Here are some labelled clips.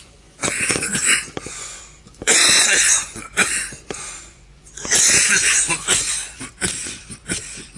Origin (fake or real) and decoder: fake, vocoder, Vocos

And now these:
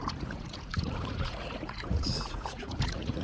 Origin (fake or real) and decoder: fake, vocoder, Vocos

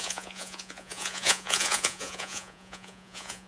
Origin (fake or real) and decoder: fake, vocoder, Vocos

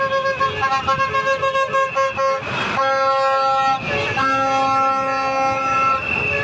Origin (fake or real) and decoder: real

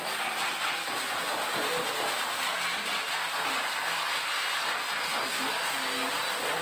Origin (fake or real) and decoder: real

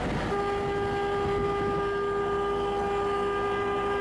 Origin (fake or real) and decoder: real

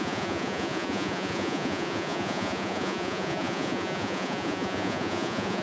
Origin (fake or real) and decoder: fake, vocoder, Vocos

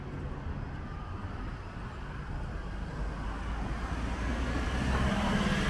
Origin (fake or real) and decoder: real